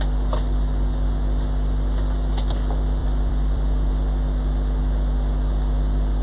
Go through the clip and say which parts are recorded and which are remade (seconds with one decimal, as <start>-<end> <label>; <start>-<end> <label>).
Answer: 0.0-3.0 recorded; 3.0-3.9 remade; 3.9-6.2 recorded